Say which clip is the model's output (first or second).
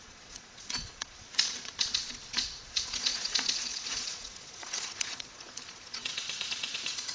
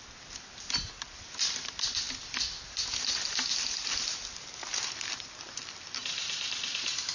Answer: first